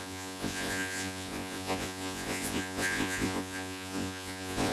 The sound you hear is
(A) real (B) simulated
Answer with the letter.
B